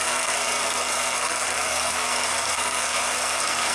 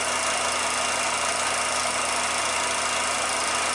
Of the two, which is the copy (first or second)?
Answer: first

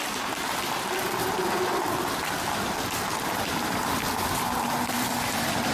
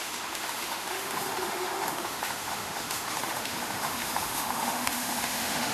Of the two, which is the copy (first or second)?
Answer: second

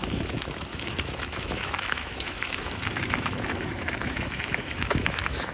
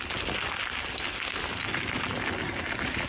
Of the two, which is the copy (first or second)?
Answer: first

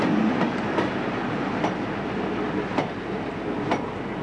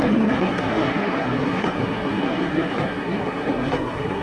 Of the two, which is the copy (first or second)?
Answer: second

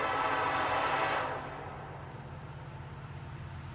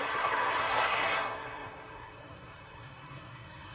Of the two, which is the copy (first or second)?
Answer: second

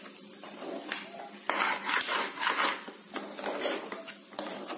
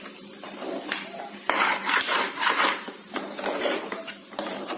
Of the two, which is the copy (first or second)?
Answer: second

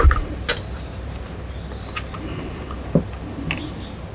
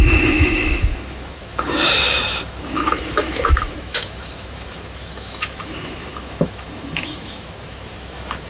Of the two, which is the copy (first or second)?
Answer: second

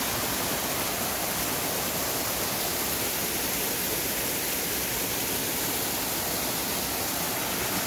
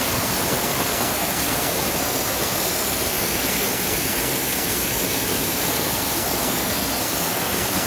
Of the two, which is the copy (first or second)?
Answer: second